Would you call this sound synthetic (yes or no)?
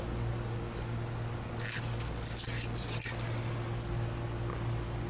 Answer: no